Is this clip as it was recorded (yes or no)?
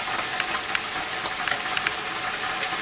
yes